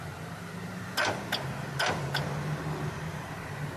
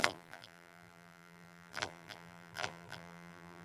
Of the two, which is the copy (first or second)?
second